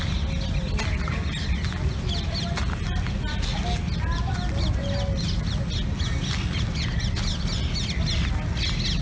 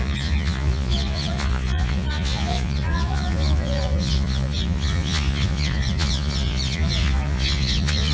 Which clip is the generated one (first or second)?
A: second